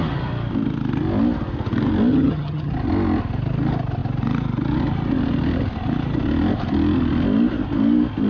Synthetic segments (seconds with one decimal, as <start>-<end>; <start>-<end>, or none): 2.1-2.7